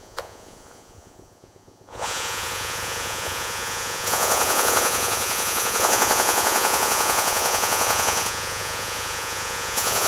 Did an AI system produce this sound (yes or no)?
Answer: yes